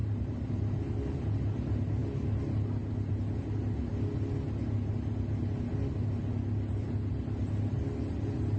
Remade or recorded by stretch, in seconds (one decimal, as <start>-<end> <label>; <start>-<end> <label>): 0.0-0.5 remade; 0.5-8.6 recorded